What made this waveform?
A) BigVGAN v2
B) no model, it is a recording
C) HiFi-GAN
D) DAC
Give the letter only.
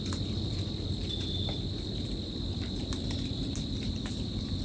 B